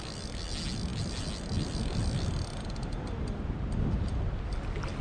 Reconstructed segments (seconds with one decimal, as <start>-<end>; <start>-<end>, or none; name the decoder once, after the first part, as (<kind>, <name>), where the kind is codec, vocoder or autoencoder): none